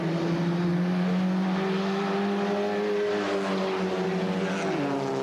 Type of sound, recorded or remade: recorded